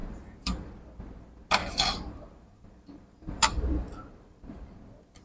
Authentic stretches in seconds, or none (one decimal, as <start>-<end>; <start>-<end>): 0.7-1.6; 4.7-5.2